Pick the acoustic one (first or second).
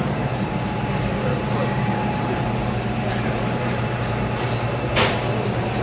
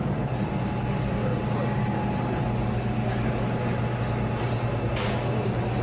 second